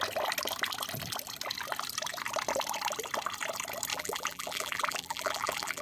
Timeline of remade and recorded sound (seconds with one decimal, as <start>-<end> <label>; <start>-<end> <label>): 0.0-3.9 recorded; 3.9-5.8 remade